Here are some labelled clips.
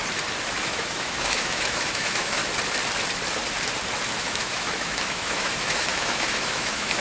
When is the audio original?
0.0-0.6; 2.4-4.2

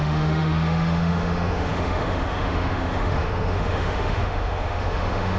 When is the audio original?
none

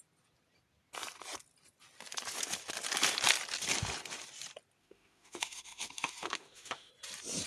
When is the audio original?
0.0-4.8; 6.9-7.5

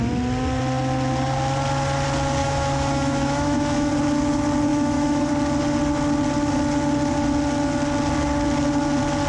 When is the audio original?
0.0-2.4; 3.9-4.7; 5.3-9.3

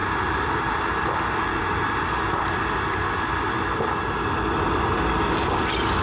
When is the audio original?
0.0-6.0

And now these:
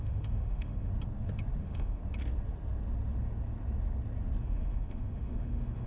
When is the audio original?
0.9-1.6; 2.0-4.4

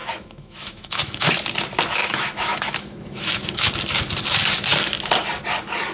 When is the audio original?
1.3-2.0; 3.7-5.9